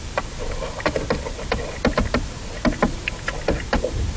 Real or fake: real